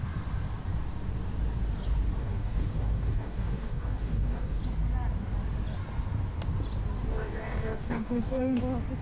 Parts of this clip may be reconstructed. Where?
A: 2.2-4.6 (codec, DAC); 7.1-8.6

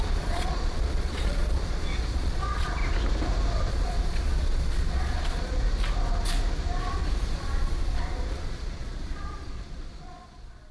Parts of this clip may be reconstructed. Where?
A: 0.0-2.8 (vocoder, Vocos); 3.7-5.5; 6.9-10.7

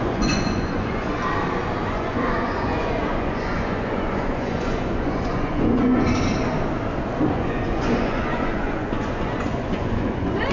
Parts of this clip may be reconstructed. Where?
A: 0.0-1.2 (vocoder, Vocos); 1.9-6.1; 7.3-10.5

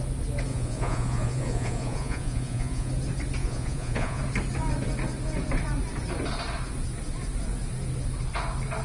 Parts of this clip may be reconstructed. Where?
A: 0.5-2.9 (vocoder, Vocos); 3.4-4.2

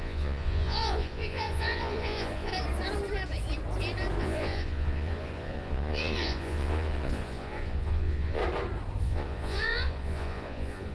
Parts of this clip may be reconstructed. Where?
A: 0.0-2.5 (vocoder, Vocos); 4.2-8.4; 9.0-10.9

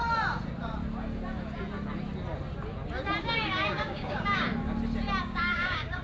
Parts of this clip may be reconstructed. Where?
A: 3.2-4.5 (codec, DAC); 5.2-6.0